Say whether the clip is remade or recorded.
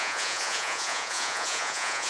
remade